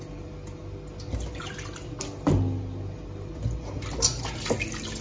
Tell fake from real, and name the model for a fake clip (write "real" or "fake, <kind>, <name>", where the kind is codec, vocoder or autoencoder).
real